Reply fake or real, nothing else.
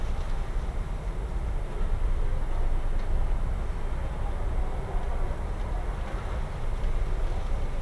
real